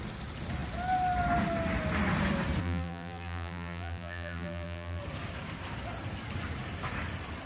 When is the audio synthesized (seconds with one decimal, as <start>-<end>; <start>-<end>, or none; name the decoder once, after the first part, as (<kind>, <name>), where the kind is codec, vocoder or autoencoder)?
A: 2.6-5.0 (vocoder, BigVGAN v2)